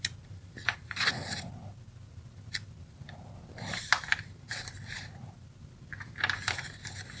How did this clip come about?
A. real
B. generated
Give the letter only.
A